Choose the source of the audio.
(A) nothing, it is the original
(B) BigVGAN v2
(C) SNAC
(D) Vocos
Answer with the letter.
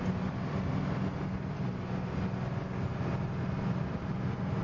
A